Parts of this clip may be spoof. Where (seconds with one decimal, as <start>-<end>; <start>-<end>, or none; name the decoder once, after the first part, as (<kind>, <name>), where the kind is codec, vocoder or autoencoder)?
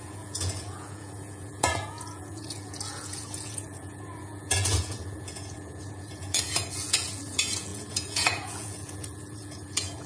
0.0-10.1 (vocoder, Vocos)